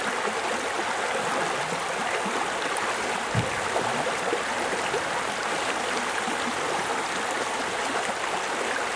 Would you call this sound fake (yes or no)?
no